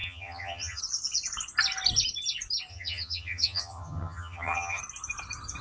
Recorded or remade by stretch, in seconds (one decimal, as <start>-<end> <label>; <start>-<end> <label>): 0.0-0.8 remade; 0.8-2.7 recorded; 2.7-4.8 remade; 4.8-5.6 recorded